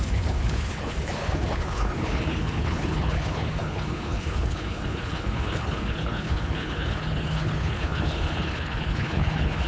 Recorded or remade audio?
remade